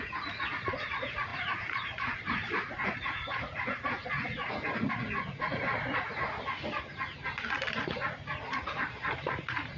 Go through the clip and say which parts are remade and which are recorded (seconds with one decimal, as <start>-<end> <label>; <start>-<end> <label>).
0.0-6.1 remade; 6.1-7.8 recorded; 7.8-9.8 remade